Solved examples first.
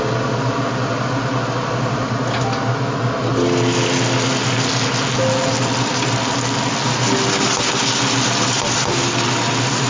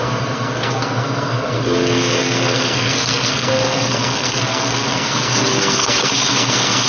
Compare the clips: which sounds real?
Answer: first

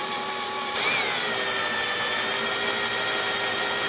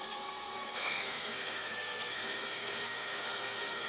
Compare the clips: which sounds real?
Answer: first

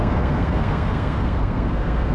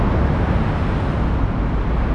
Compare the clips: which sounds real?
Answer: second